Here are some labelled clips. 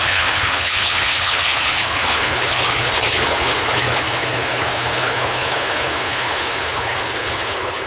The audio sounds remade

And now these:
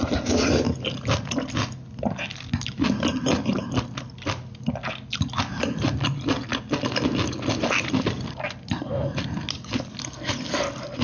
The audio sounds recorded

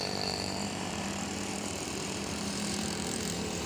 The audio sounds remade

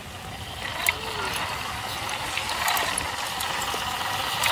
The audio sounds recorded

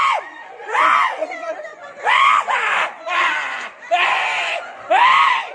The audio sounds remade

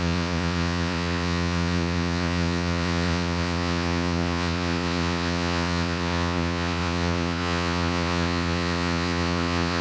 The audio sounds remade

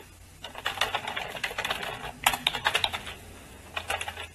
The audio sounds recorded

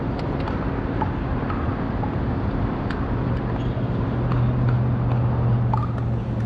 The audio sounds recorded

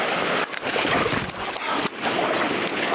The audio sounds recorded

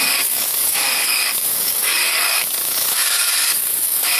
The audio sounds remade